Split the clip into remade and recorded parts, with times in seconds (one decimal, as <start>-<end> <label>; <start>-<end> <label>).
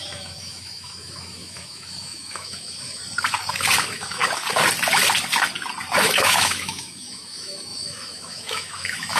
0.0-3.0 remade; 3.0-3.8 recorded; 3.8-4.2 remade; 4.2-6.0 recorded; 6.0-9.2 remade